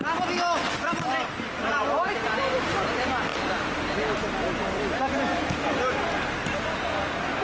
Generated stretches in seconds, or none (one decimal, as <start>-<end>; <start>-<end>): none